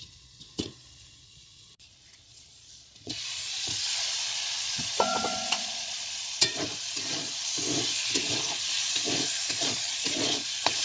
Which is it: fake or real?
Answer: fake